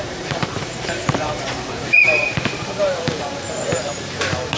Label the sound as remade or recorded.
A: remade